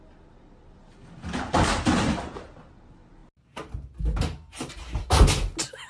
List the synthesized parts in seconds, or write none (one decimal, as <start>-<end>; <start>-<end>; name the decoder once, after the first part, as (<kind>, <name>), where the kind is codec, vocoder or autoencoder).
none